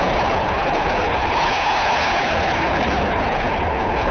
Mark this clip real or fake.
fake